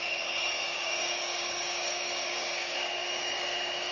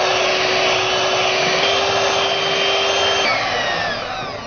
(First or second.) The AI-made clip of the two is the first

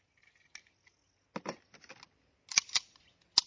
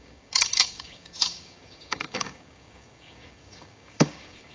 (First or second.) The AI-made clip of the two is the second